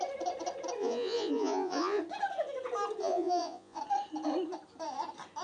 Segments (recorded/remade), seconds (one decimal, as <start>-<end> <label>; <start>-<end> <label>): 0.0-0.8 recorded; 0.8-2.0 remade; 2.0-3.0 recorded; 3.0-3.8 remade; 3.8-5.4 recorded